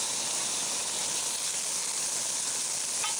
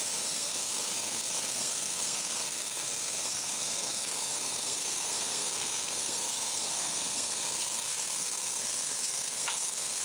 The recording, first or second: first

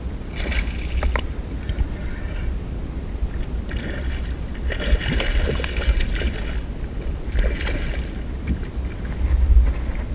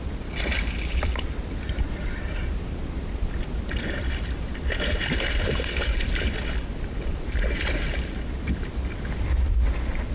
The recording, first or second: first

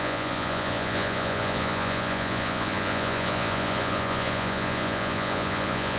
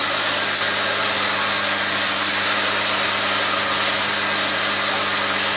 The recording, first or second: second